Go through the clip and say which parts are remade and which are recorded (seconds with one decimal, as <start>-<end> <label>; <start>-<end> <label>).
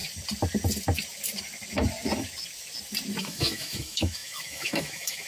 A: 0.0-3.2 recorded; 3.2-5.3 remade